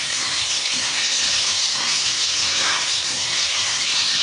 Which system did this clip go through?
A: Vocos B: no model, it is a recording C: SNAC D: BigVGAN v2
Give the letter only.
C